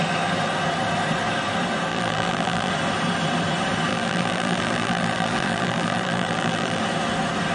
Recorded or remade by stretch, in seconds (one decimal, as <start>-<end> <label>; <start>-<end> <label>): 0.0-1.9 recorded; 1.9-2.7 remade; 2.7-3.9 recorded; 3.9-6.8 remade; 6.8-7.5 recorded